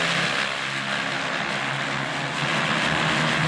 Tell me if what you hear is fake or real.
real